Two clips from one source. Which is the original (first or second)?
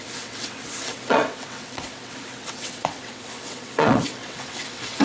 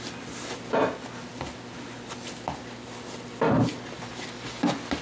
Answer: second